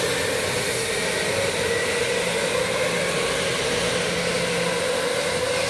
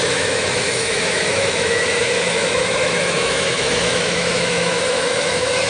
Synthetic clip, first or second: second